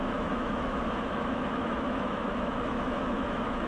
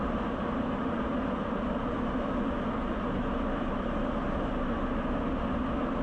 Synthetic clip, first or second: first